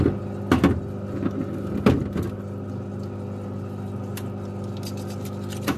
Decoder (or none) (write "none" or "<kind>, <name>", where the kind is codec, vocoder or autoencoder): none